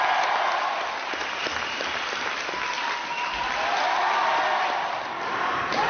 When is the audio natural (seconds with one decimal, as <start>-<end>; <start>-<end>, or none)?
0.0-1.2; 2.3-5.9